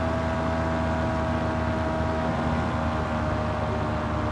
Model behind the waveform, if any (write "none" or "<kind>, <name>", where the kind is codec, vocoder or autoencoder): none